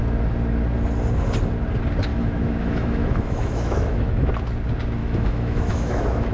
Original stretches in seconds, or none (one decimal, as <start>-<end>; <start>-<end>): 0.0-2.1; 4.3-5.0